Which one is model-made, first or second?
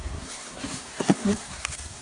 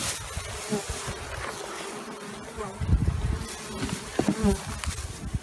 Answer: first